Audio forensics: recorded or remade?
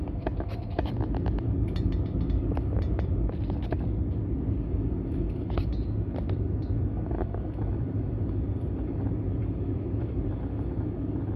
recorded